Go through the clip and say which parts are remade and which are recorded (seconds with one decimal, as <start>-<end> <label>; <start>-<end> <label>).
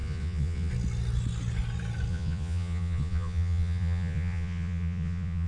0.0-0.7 remade; 0.7-2.1 recorded; 2.1-5.5 remade